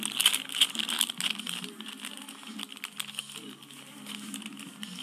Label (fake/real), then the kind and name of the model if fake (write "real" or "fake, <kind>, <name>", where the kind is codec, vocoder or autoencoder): real